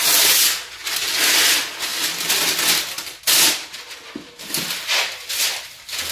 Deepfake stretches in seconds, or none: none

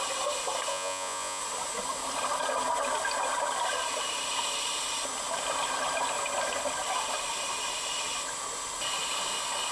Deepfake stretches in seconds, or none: 0.7-1.4 (vocoder, Vocos)